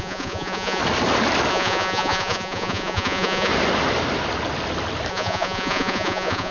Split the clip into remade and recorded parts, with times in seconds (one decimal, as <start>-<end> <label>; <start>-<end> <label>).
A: 0.0-0.8 remade; 0.8-1.5 recorded; 1.5-3.5 remade; 3.5-5.1 recorded; 5.1-6.5 remade